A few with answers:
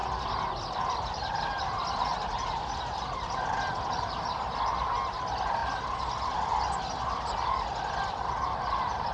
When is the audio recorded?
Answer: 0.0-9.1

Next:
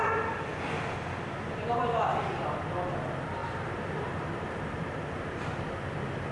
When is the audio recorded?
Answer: 0.0-3.4; 5.6-6.3

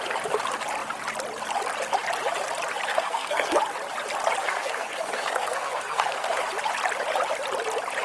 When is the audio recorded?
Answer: 0.0-2.9; 3.6-4.4; 6.4-8.0

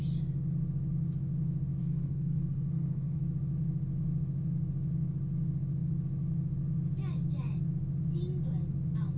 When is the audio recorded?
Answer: 0.0-1.8; 3.2-9.2

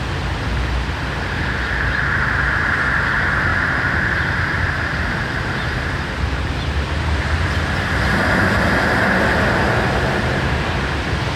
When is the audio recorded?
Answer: 0.0-3.5; 6.5-11.4

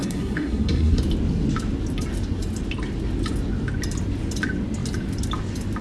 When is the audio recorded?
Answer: 1.0-5.8

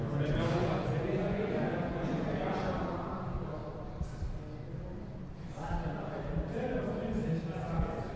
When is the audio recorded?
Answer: 0.0-0.6; 2.7-8.2

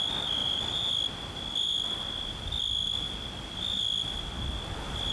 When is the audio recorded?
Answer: 0.0-5.1